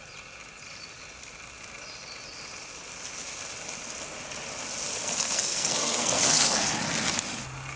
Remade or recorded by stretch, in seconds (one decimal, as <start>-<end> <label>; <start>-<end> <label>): 0.0-5.0 recorded; 5.0-6.8 remade; 6.8-7.8 recorded